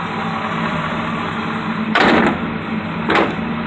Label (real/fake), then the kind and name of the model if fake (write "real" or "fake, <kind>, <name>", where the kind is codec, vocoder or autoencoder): real